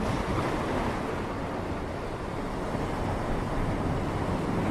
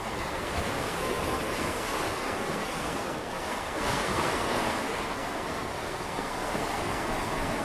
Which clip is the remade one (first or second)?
second